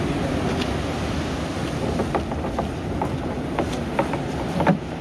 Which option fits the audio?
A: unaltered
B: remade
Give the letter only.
A